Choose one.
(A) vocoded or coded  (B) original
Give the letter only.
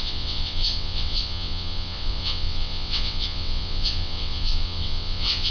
A